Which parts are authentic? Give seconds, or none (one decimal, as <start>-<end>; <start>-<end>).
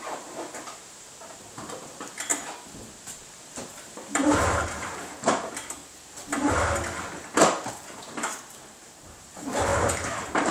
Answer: 2.3-3.2; 5.8-7.7